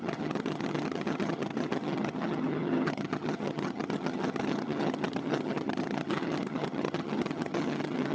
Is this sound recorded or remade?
remade